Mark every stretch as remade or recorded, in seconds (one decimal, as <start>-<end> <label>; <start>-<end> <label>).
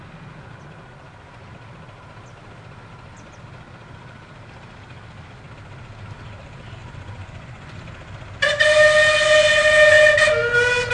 0.0-6.8 recorded; 6.8-7.8 remade; 7.8-10.9 recorded